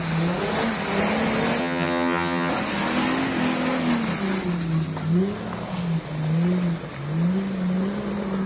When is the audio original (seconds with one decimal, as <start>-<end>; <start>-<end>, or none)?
0.0-1.6; 2.5-8.5